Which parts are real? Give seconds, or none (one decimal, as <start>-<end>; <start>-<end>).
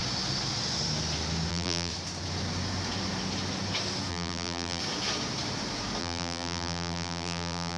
0.0-1.5; 1.9-4.1; 4.8-6.0